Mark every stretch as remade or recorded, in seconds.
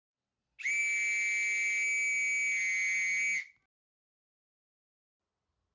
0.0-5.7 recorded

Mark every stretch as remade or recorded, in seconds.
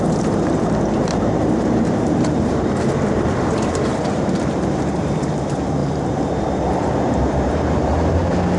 0.0-8.6 remade